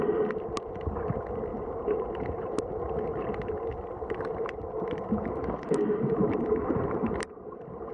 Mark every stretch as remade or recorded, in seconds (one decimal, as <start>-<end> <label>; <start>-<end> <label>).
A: 0.0-1.5 recorded; 1.5-2.6 remade; 2.6-7.9 recorded